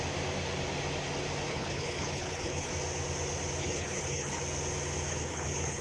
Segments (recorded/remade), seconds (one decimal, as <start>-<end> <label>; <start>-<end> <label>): 0.0-1.5 recorded; 1.5-2.7 remade; 2.7-3.6 recorded; 3.6-4.4 remade; 4.4-5.1 recorded; 5.1-5.8 remade